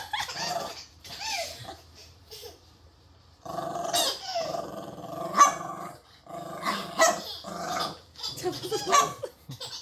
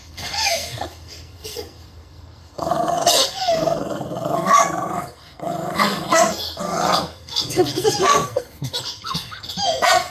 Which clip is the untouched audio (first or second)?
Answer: first